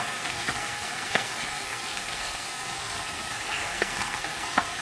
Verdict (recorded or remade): remade